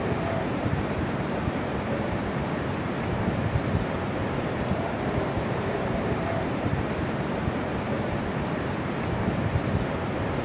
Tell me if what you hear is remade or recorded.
remade